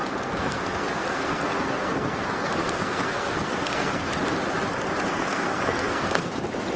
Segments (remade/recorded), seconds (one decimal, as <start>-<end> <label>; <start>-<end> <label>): 0.0-4.1 remade; 4.1-5.1 recorded; 5.1-6.3 remade; 6.3-6.8 recorded